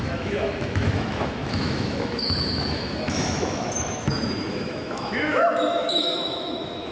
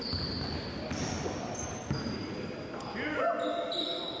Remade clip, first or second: first